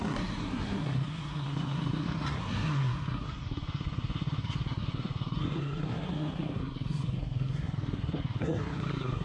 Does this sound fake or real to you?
fake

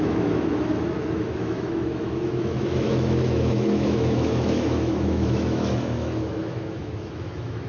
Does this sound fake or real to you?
fake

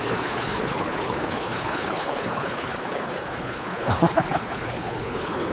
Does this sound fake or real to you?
fake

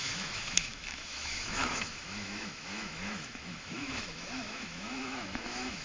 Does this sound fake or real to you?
fake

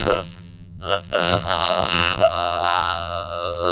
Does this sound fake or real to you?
fake